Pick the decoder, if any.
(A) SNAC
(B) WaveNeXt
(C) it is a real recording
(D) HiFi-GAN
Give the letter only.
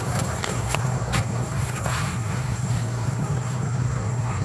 A